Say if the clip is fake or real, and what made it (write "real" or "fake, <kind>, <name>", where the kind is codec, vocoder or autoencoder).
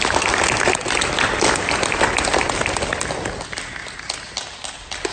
real